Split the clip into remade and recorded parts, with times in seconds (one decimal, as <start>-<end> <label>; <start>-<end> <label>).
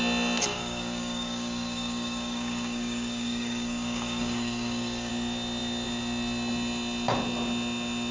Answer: 0.0-0.5 recorded; 0.5-5.1 remade; 5.1-8.1 recorded